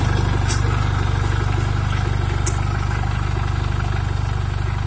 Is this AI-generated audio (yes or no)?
no